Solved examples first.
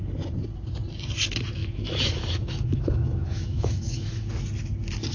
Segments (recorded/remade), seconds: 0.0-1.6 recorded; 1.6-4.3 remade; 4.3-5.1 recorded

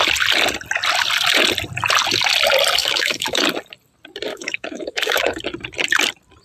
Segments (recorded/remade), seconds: 0.0-2.8 recorded; 2.8-3.4 remade; 3.4-4.3 recorded; 4.3-5.4 remade; 5.4-6.4 recorded

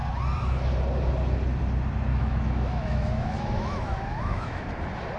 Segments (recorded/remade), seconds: 0.0-2.1 recorded; 2.1-4.7 remade; 4.7-5.2 recorded